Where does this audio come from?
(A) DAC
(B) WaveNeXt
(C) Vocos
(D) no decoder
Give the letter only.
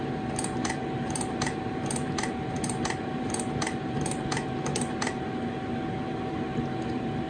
D